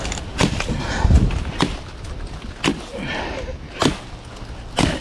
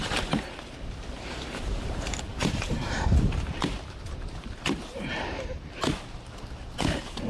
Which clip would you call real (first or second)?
first